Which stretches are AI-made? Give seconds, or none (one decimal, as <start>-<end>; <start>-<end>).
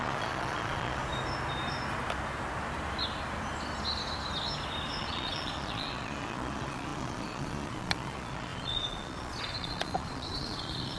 0.0-1.0; 5.0-11.0